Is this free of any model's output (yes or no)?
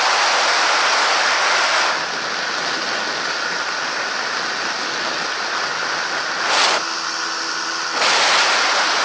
yes